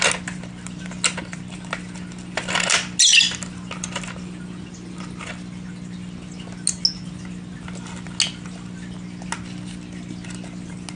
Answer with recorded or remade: recorded